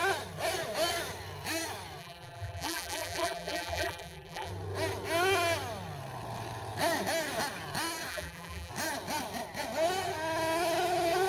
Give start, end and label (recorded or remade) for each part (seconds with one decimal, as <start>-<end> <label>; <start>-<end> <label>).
0.0-2.0 recorded; 2.0-4.5 remade; 4.5-8.1 recorded; 8.1-8.7 remade; 8.7-11.3 recorded